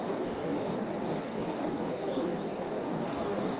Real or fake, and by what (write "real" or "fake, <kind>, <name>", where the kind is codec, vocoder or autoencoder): fake, codec, DAC